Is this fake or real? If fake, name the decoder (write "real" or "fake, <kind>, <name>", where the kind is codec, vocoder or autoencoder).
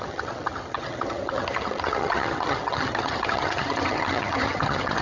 fake, vocoder, HiFi-GAN